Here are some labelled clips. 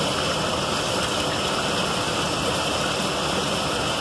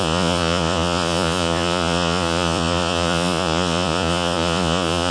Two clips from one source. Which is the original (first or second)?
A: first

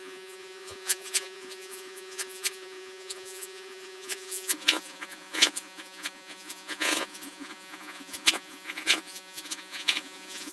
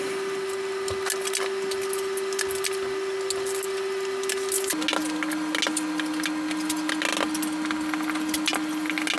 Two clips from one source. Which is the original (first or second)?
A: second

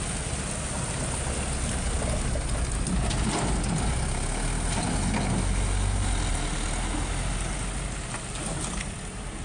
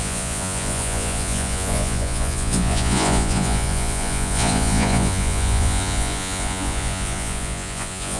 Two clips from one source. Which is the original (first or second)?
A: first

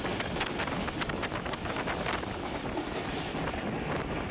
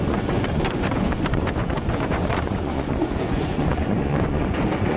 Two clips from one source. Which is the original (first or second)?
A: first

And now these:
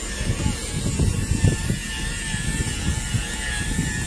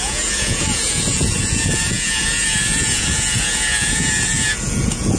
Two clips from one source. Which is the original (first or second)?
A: first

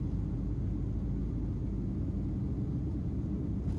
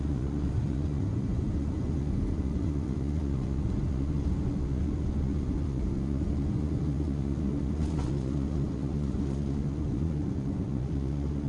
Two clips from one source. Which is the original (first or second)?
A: first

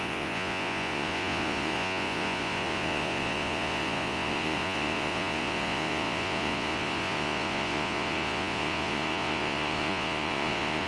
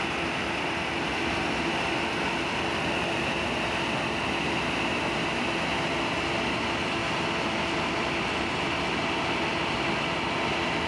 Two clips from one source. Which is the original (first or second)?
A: second